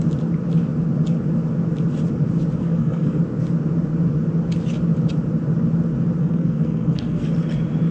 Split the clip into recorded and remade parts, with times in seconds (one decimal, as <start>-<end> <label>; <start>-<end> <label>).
0.0-2.6 recorded; 2.6-3.2 remade; 3.2-6.2 recorded; 6.2-7.3 remade; 7.3-7.9 recorded